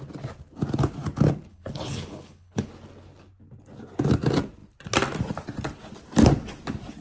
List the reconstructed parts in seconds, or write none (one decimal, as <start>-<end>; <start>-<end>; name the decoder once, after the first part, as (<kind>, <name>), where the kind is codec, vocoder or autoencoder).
1.5-2.7 (codec, HILCodec)